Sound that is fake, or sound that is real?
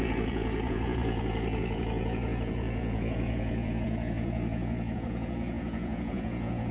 fake